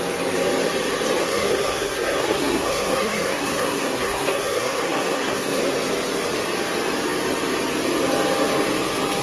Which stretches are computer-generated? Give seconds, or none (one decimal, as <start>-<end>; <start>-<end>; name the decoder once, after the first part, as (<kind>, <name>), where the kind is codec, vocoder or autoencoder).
1.2-5.6 (codec, SNAC)